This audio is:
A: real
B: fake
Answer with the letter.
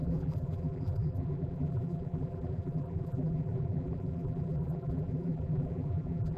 B